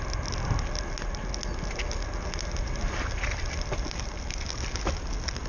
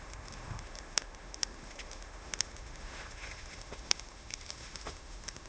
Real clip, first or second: first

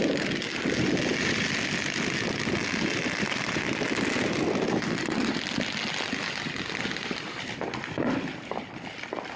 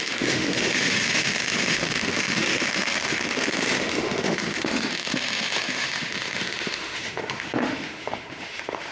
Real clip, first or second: first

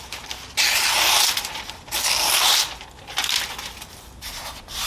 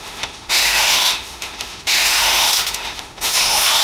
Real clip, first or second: first